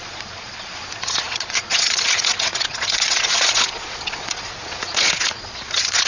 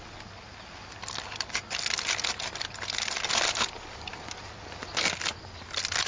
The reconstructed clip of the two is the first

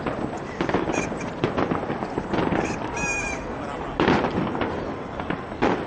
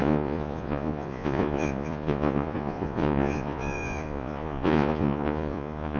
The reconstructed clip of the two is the second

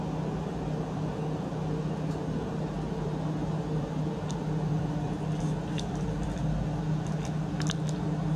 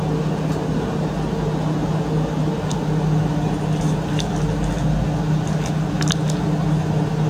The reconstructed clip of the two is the first